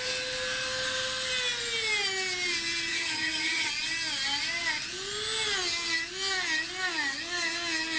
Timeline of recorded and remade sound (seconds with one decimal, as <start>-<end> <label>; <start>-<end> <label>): 0.0-2.9 recorded; 2.9-3.7 remade; 3.7-8.0 recorded